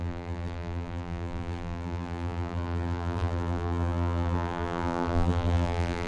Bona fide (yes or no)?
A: no